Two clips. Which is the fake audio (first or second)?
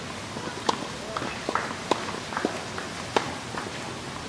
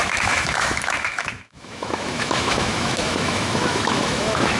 second